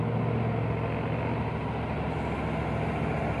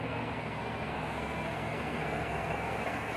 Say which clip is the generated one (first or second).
second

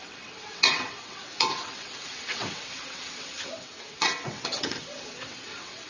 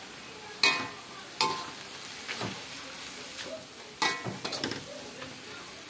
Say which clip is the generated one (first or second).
first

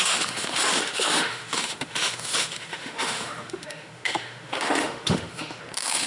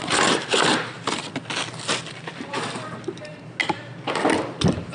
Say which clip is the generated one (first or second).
first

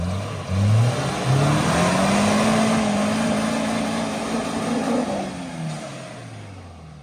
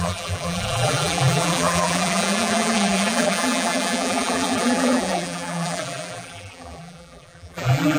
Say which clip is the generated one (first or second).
second